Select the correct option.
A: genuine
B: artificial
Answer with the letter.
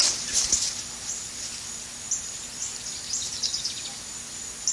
A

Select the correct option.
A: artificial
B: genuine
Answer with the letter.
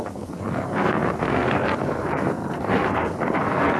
A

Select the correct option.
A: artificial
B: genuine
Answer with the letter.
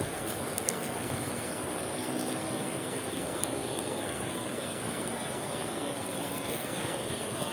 A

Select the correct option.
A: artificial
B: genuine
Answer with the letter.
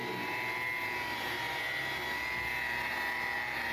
B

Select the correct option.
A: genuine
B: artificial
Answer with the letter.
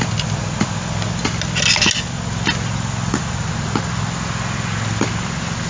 A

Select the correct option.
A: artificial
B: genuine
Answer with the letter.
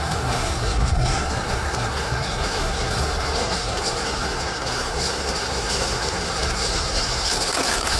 A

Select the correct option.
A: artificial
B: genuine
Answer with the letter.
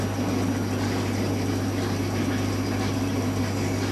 B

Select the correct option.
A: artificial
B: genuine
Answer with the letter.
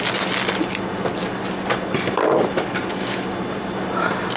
B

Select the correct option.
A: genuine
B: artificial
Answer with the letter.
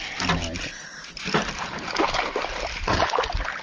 A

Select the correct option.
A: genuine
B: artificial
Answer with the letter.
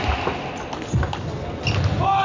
A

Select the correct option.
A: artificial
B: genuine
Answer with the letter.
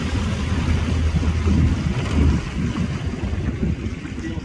B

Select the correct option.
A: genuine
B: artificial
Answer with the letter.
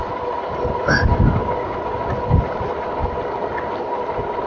A